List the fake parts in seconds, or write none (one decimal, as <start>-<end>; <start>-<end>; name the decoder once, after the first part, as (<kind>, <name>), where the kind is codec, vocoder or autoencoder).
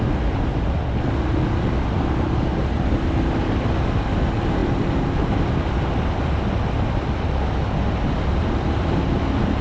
none